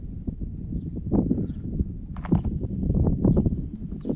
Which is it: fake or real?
real